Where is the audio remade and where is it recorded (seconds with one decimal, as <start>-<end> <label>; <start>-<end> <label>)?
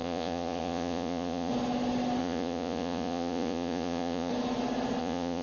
0.0-1.5 remade; 1.5-2.2 recorded; 2.2-4.3 remade; 4.3-5.0 recorded; 5.0-5.4 remade